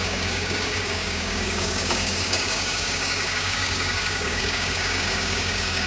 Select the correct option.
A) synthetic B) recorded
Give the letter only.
A